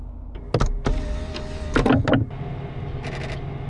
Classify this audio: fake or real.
real